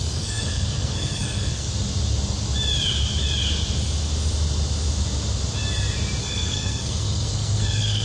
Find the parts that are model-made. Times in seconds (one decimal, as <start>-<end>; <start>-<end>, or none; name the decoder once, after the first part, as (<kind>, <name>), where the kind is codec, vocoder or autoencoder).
0.0-1.7 (codec, SNAC); 6.2-8.0